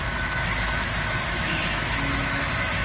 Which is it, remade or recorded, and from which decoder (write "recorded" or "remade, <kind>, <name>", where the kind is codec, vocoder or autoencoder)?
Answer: remade, autoencoder, DAC-VAE